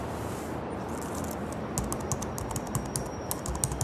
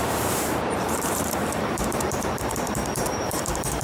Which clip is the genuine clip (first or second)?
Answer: first